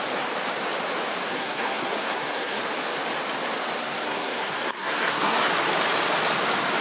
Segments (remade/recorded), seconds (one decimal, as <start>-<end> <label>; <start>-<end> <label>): 0.0-1.3 recorded; 1.3-2.6 remade; 2.6-3.8 recorded; 3.8-5.5 remade; 5.5-6.8 recorded